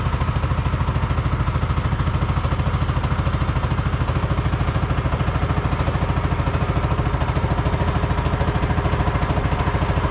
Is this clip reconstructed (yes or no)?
no